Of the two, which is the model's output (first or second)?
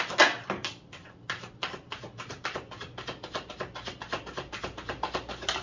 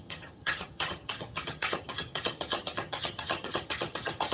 second